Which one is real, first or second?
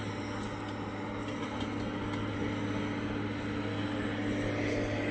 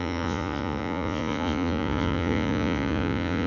first